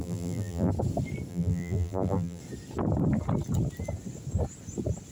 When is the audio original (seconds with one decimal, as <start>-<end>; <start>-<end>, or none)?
0.7-1.3; 2.4-5.1